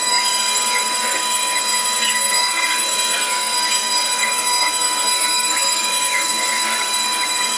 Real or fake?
fake